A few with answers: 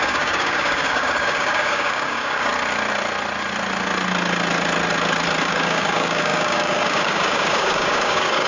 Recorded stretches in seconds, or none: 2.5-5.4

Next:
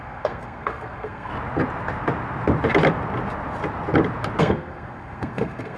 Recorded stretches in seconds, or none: 1.3-4.4

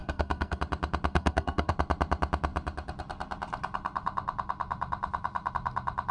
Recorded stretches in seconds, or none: 0.6-1.1; 1.7-6.1

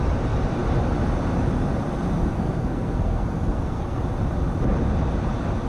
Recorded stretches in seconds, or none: 0.0-2.3; 4.0-5.7

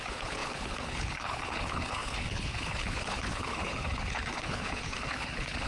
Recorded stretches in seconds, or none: none

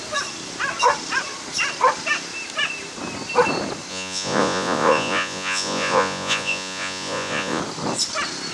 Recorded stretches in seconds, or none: 0.0-3.9; 7.6-8.5

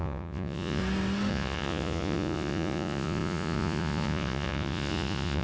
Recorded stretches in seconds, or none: 0.8-1.3